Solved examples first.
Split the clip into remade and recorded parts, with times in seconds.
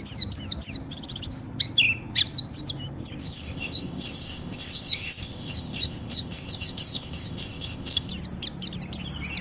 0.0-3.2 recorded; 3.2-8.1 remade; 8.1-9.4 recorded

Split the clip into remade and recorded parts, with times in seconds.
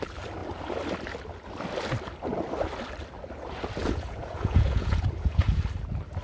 0.0-3.8 recorded; 3.8-5.6 remade; 5.6-6.2 recorded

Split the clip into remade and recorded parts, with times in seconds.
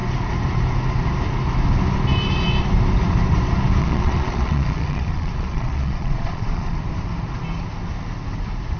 0.0-3.8 recorded; 3.8-6.8 remade; 6.8-8.8 recorded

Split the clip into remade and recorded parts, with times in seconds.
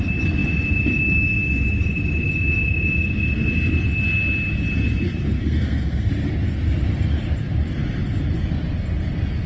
0.0-5.4 recorded; 5.4-6.1 remade; 6.1-9.5 recorded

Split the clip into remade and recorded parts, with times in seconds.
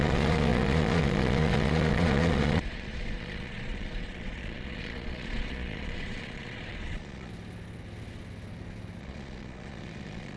0.0-7.3 remade; 7.3-9.0 recorded; 9.0-10.4 remade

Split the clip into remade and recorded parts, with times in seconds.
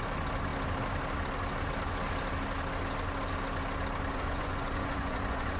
0.0-4.1 recorded; 4.1-5.6 remade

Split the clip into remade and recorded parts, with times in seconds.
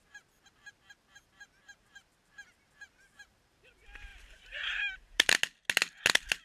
0.0-4.1 recorded; 4.1-5.4 remade; 5.4-6.4 recorded